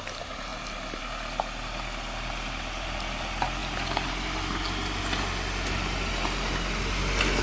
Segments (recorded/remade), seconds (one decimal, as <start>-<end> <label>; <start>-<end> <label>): 0.0-7.4 recorded